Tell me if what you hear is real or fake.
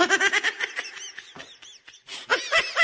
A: real